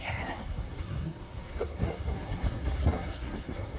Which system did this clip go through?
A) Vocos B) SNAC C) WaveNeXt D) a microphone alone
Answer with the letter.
B